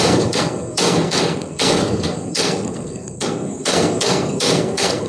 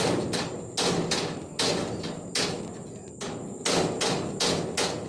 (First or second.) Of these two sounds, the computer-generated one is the first